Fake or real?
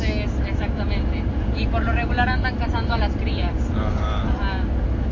real